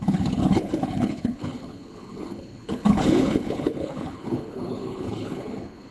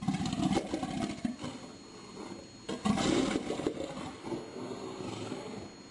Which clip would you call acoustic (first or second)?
second